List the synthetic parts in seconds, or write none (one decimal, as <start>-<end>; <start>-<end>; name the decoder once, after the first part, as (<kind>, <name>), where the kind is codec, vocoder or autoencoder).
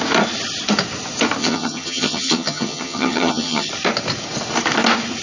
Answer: 1.4-3.7 (vocoder, HiFi-GAN)